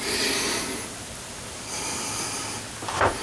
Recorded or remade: recorded